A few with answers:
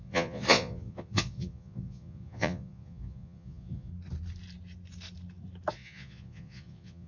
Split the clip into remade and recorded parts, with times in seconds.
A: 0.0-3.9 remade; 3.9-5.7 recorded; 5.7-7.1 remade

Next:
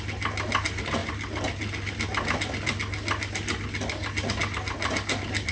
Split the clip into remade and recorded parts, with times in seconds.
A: 0.0-5.5 recorded

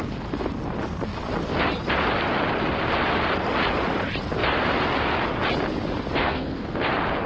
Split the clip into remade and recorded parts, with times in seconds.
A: 0.0-6.2 recorded; 6.2-6.8 remade; 6.8-7.3 recorded

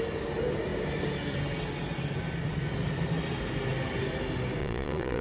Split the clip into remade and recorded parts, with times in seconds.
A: 0.0-4.6 recorded; 4.6-5.2 remade

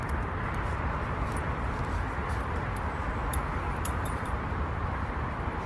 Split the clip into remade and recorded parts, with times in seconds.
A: 0.0-2.2 recorded; 2.2-5.7 remade

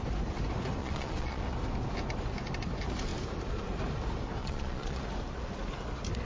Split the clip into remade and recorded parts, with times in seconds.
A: 0.0-0.8 recorded; 0.8-1.4 remade; 1.4-4.4 recorded; 4.4-5.0 remade; 5.0-6.3 recorded